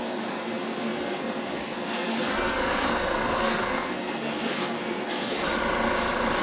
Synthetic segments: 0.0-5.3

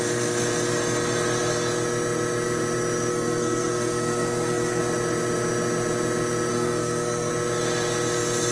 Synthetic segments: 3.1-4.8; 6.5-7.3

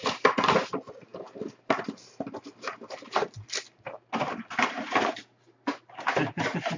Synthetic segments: none

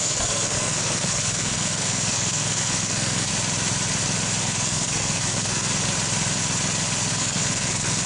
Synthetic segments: 0.0-3.3; 4.4-5.7; 7.1-8.1

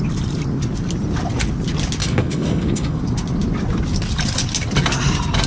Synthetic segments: 2.0-3.0

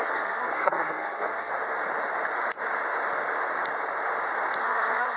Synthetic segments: 0.0-1.5; 4.6-5.2